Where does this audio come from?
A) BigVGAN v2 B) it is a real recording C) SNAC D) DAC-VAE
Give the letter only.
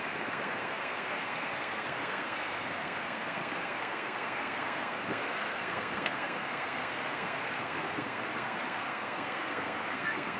C